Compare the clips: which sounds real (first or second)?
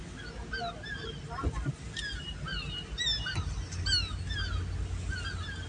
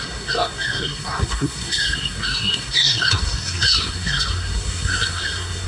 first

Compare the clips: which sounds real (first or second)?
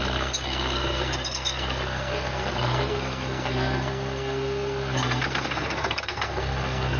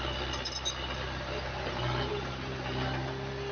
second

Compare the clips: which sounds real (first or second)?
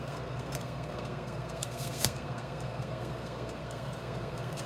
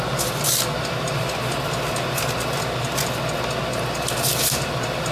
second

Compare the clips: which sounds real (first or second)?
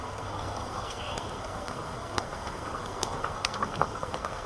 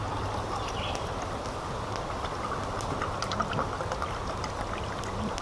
second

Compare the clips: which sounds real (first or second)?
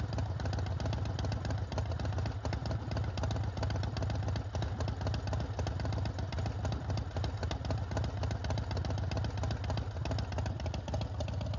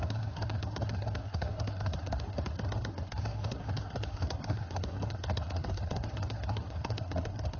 first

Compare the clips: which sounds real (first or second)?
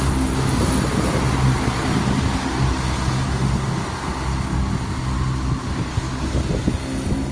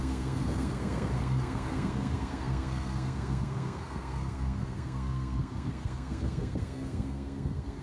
first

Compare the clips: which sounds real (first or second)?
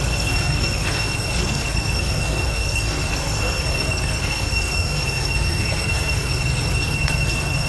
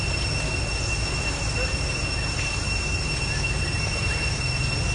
second